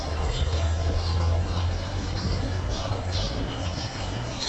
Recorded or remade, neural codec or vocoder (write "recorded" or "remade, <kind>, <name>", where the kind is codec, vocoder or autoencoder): remade, codec, SNAC